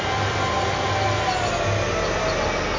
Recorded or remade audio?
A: recorded